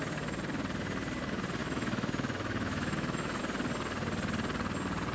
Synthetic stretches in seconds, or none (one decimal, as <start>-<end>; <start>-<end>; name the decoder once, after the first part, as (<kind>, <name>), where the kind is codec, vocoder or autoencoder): 1.6-3.4 (autoencoder, DAC-VAE)